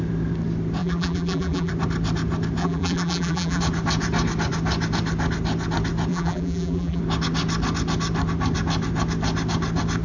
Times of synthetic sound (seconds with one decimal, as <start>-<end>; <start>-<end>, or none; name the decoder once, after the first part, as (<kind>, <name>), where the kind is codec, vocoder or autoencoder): 0.8-1.7 (vocoder, BigVGAN v2); 2.6-3.6; 6.1-7.0